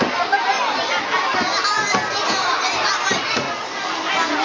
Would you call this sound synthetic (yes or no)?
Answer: no